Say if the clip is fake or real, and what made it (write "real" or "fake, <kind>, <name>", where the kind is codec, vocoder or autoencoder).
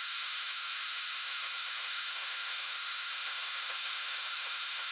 fake, autoencoder, DAC-VAE